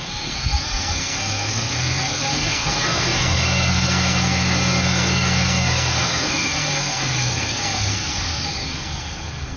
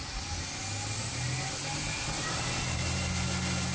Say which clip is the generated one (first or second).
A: first